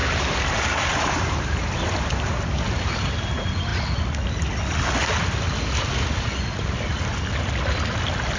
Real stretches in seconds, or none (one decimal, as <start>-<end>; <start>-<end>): 1.7-8.4